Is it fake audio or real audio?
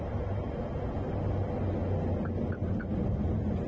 real